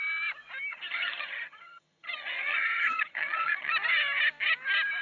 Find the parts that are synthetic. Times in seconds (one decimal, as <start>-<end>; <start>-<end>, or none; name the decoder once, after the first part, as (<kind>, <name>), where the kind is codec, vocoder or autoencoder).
0.7-3.7 (vocoder, HiFi-GAN)